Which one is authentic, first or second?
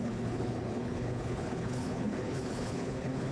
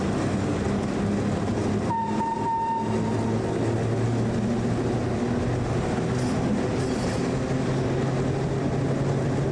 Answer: second